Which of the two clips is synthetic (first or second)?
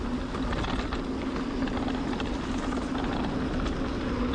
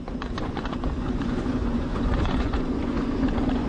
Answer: second